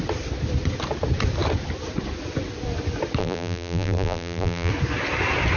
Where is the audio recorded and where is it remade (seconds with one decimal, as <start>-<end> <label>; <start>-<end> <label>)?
0.0-3.2 recorded; 3.2-4.7 remade; 4.7-5.6 recorded